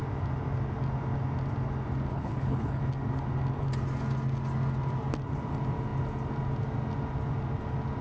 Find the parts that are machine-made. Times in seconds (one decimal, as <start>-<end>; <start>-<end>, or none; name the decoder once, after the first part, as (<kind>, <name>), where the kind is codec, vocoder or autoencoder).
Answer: 2.1-2.8 (codec, HILCodec)